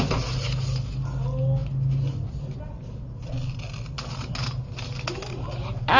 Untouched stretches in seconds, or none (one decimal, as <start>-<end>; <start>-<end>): 0.0-6.0